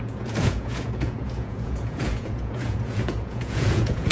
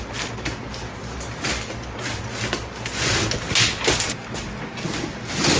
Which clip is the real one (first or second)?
second